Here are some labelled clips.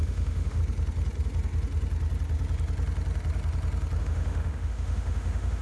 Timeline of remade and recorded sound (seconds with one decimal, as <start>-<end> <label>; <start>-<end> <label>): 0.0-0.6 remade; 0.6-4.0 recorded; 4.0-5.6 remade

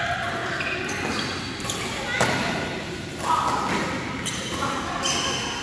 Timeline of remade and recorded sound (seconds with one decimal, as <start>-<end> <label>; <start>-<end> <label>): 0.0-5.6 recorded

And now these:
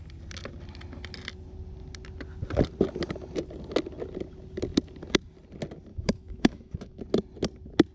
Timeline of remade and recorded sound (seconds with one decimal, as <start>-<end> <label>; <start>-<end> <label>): 0.0-5.9 recorded; 5.9-7.0 remade; 7.0-7.9 recorded

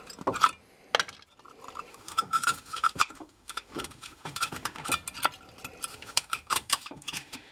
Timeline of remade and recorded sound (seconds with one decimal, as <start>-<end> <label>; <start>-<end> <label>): 0.0-1.9 recorded; 1.9-4.9 remade; 4.9-5.9 recorded; 5.9-7.5 remade

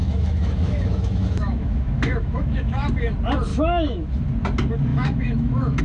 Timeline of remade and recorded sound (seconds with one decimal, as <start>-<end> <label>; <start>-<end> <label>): 0.0-2.9 remade; 2.9-3.5 recorded; 3.5-4.2 remade; 4.2-4.9 recorded; 4.9-5.8 remade